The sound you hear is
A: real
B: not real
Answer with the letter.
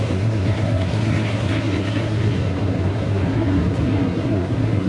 B